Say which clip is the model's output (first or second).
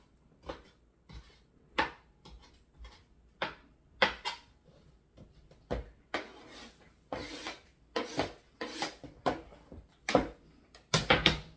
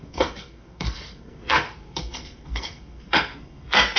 second